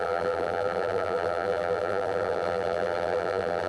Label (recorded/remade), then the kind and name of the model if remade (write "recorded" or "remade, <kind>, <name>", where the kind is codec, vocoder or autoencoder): remade, vocoder, BigVGAN v2